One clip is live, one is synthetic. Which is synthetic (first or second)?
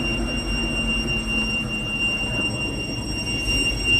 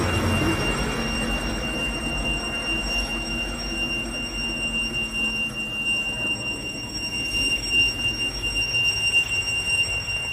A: second